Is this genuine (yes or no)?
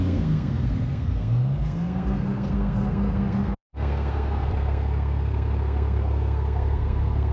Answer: no